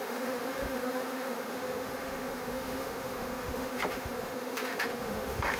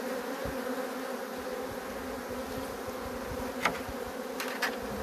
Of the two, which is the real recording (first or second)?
second